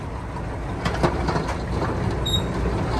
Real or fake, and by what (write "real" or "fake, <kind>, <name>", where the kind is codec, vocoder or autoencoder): real